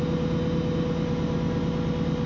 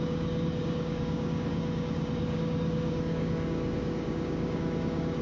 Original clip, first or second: first